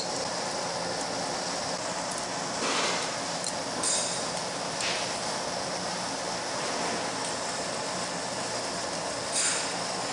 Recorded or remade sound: recorded